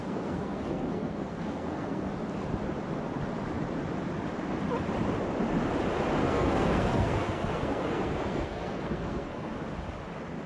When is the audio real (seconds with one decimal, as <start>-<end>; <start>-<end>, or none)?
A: 2.1-6.2; 9.5-10.5